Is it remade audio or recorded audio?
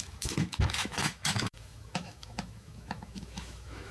remade